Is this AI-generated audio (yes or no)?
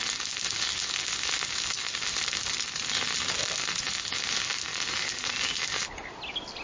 no